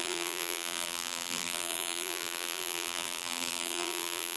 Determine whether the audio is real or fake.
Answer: fake